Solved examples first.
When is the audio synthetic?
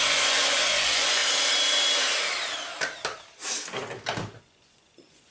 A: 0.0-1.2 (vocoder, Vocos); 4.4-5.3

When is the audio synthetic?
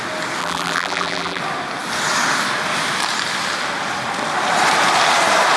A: 0.4-1.4 (vocoder, BigVGAN v2)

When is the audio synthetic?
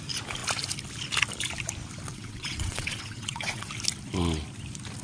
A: 2.1-3.7 (vocoder, WaveNeXt)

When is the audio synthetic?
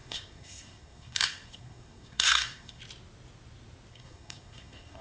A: 0.0-2.8 (codec, SNAC); 3.9-5.0